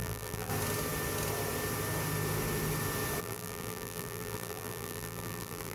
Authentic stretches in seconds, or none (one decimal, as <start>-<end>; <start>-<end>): 0.5-3.2